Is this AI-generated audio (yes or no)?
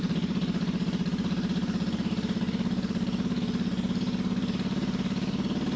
yes